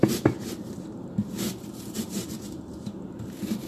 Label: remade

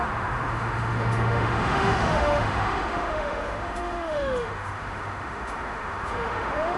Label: remade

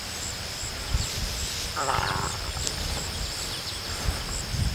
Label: recorded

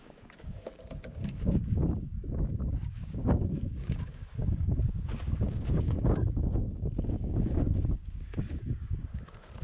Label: remade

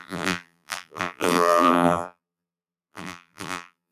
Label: remade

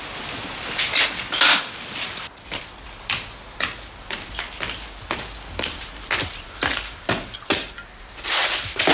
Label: recorded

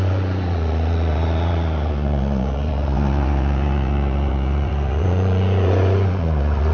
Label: remade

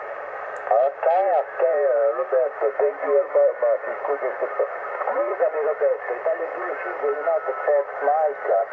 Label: recorded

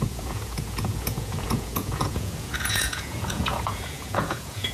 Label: remade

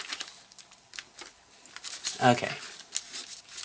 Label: recorded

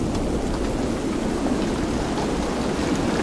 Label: recorded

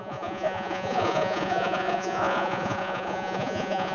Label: remade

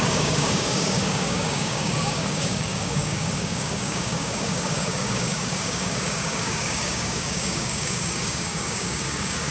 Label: remade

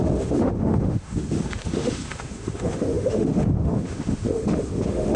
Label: remade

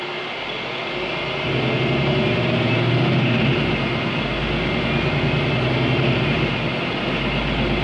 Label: recorded